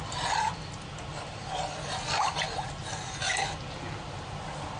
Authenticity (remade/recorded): recorded